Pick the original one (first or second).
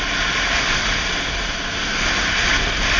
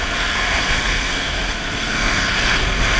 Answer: first